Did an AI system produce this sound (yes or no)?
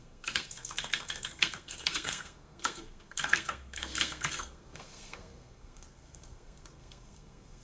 yes